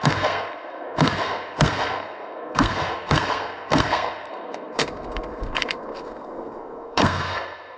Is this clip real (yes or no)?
no